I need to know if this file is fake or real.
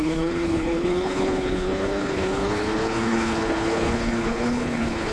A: fake